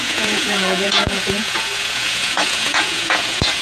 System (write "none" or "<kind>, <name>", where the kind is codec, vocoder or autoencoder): vocoder, Vocos